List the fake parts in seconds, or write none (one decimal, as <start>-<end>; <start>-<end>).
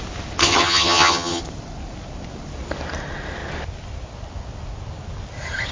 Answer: 0.4-1.4